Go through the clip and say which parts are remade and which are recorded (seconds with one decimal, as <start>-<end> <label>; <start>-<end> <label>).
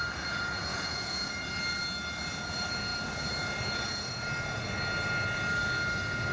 0.0-0.7 recorded; 0.7-1.3 remade; 1.3-6.3 recorded